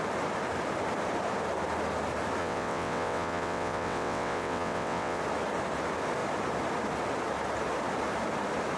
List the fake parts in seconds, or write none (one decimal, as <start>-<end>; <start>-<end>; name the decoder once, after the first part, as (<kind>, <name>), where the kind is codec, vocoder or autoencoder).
2.4-5.2 (vocoder, WaveNeXt)